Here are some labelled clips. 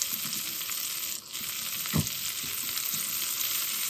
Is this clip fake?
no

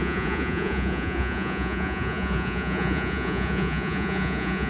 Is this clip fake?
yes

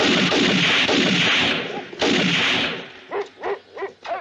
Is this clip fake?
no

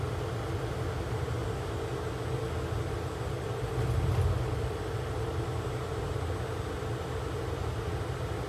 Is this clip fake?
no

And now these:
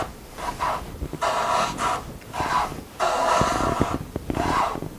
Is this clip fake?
no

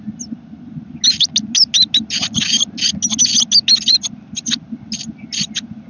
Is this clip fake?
no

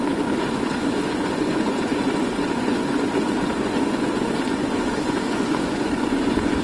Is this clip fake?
yes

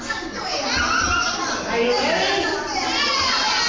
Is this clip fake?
no